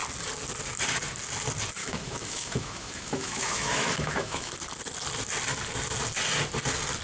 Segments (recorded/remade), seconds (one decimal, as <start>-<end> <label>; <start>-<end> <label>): 0.0-1.8 recorded; 1.8-4.5 remade; 4.5-7.0 recorded